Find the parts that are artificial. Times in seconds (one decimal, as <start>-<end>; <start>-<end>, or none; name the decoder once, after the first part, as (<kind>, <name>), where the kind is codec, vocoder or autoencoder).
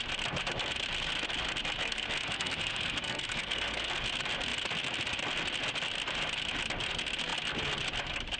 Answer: 1.8-3.9 (codec, SNAC)